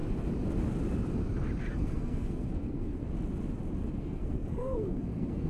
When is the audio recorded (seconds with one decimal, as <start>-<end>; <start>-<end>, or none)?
0.0-1.7; 3.0-4.0